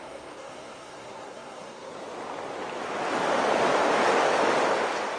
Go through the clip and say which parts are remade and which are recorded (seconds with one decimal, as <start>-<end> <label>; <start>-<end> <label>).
0.0-1.9 remade; 1.9-5.2 recorded